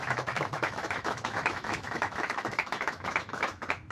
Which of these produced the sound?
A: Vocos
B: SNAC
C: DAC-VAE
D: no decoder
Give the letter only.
C